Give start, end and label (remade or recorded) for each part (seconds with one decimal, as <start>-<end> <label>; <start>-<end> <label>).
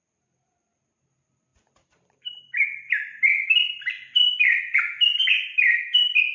0.0-6.3 recorded